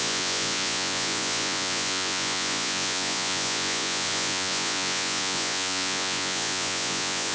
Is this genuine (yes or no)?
no